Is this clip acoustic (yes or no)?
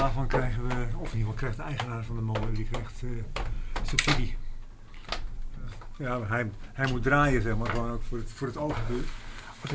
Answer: yes